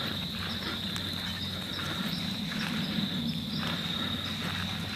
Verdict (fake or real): fake